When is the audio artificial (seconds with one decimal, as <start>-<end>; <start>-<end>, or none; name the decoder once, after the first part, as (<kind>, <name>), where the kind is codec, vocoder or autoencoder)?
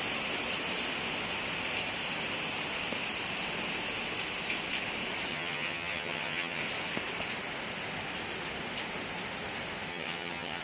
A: 5.3-6.6 (vocoder, HiFi-GAN); 9.9-10.6